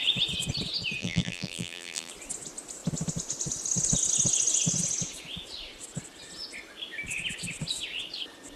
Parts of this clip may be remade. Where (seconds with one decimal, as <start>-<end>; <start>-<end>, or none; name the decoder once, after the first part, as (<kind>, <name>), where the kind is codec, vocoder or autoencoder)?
1.0-2.1 (vocoder, BigVGAN v2)